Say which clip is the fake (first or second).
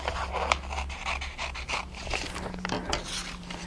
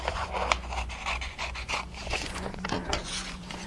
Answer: second